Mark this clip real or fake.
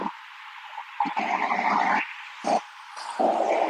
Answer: real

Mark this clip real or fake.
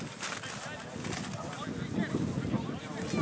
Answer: real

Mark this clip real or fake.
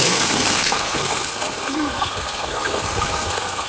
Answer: fake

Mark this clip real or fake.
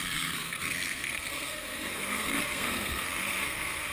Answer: fake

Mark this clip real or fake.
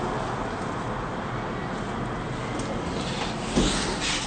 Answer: real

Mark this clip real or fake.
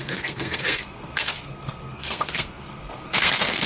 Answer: fake